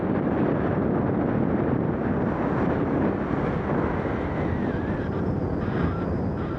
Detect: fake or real real